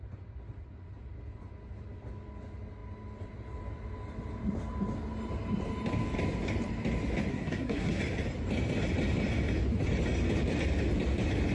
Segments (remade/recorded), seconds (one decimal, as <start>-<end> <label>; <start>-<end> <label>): 0.0-7.3 recorded; 7.3-8.0 remade; 8.0-11.5 recorded